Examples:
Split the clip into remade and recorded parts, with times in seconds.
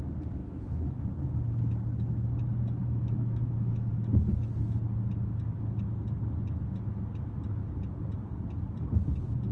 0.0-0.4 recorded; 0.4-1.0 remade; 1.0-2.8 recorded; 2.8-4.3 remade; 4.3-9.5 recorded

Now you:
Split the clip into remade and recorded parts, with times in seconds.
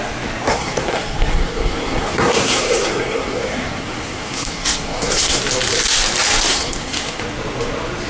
0.0-0.5 recorded; 0.5-5.4 remade; 5.4-6.5 recorded; 6.5-7.2 remade; 7.2-8.1 recorded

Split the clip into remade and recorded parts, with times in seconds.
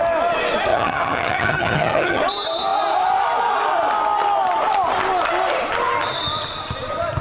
0.0-0.7 recorded; 0.7-2.2 remade; 2.2-7.2 recorded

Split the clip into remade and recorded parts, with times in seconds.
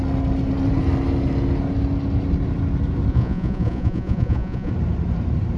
0.0-3.1 recorded; 3.1-4.7 remade; 4.7-5.6 recorded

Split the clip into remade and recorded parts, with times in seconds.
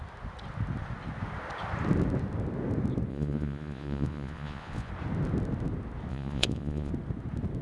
0.0-3.1 recorded; 3.1-4.9 remade; 4.9-6.1 recorded; 6.1-6.9 remade; 6.9-7.6 recorded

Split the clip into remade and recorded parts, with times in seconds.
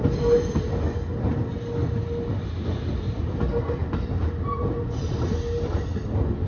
0.0-3.8 recorded; 3.8-5.4 remade; 5.4-6.5 recorded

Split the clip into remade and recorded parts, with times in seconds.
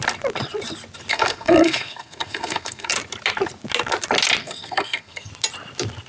0.0-1.1 recorded; 1.1-2.9 remade; 2.9-4.4 recorded; 4.4-5.3 remade; 5.3-6.1 recorded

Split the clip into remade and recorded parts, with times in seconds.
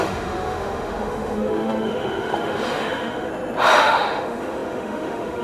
0.0-3.3 remade; 3.3-3.8 recorded; 3.8-5.4 remade